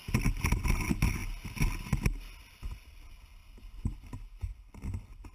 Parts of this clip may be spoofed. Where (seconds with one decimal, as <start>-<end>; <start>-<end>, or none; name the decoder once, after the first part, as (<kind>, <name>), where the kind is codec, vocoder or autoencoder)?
none